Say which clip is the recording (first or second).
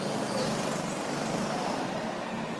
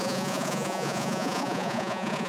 first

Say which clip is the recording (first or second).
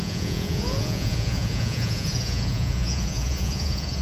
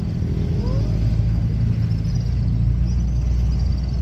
second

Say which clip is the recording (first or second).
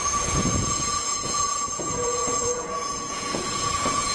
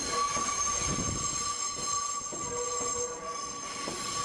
second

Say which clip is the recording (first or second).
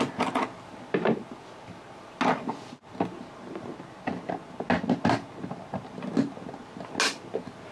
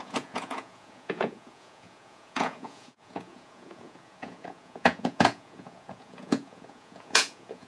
first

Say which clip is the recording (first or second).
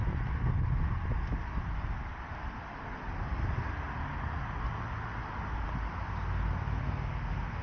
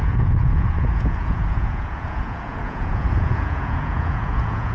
first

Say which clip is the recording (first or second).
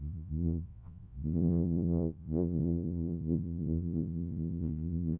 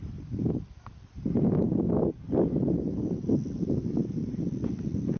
second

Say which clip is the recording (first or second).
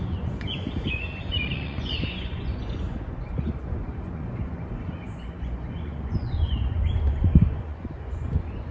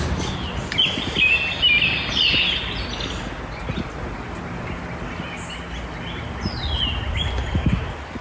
second